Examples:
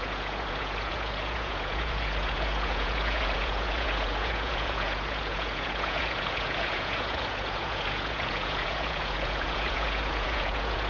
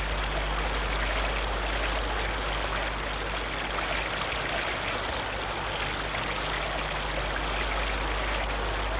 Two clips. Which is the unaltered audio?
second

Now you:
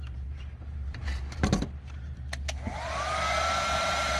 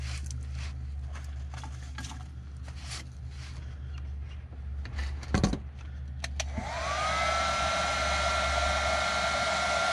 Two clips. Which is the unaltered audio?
second